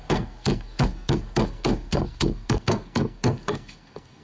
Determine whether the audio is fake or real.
fake